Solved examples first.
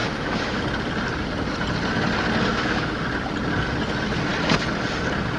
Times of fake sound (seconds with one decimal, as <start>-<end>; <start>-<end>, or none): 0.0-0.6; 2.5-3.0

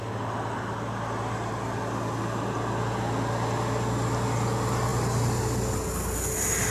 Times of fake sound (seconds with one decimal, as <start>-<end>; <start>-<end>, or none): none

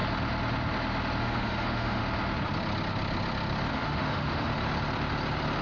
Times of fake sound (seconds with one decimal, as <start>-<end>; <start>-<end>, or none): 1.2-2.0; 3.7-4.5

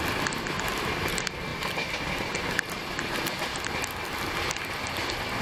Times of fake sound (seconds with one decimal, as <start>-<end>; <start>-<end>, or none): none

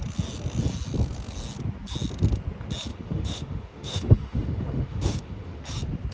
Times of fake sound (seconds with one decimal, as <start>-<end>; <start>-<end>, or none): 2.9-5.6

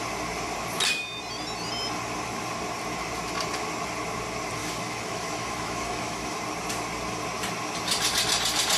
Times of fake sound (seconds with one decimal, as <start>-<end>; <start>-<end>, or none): 4.6-6.4